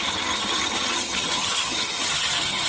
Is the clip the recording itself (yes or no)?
no